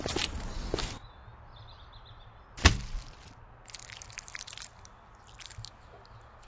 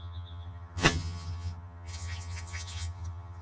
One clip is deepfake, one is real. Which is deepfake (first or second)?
second